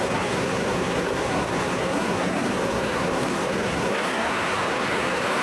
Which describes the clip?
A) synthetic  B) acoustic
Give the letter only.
A